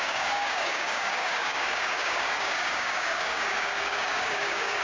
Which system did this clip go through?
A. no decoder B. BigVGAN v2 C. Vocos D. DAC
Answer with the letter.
D